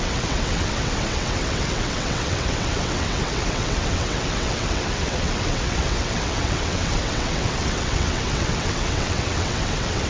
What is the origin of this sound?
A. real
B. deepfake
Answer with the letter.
B